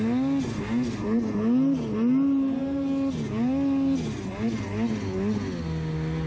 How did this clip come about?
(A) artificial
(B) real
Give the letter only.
B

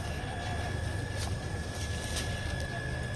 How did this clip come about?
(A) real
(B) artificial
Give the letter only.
A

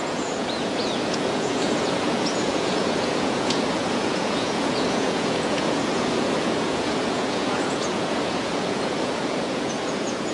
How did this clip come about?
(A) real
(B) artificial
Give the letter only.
B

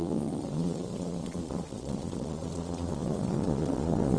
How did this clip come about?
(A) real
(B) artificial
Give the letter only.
B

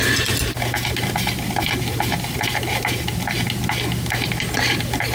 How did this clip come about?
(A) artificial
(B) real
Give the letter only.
B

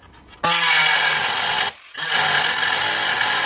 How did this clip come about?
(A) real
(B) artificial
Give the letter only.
A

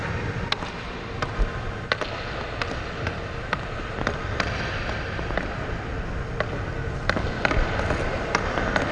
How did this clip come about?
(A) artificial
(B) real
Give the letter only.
B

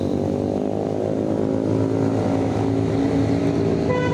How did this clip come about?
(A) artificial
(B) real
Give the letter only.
B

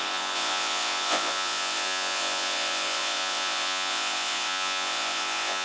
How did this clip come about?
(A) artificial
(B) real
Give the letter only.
A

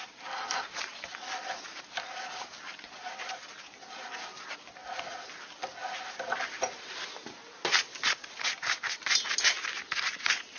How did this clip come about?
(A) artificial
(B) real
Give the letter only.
B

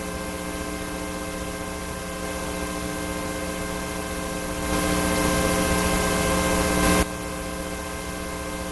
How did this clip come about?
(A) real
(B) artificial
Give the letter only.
A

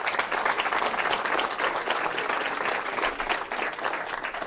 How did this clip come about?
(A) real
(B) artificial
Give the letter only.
A